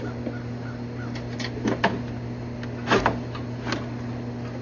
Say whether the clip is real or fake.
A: real